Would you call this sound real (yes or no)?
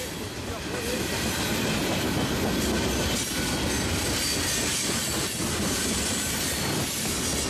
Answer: yes